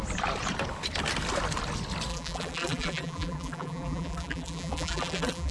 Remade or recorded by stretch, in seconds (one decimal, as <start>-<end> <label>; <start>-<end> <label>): 0.0-2.1 recorded; 2.1-5.5 remade